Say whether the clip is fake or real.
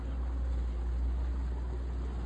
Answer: real